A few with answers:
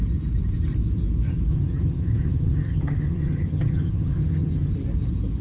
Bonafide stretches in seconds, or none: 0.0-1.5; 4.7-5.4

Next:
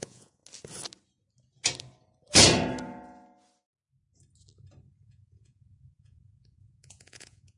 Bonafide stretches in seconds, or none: 0.4-5.0

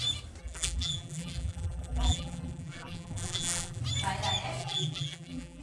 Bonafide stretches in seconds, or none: 0.0-0.4; 3.8-4.6